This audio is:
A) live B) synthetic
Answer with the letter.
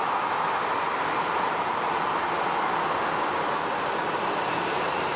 A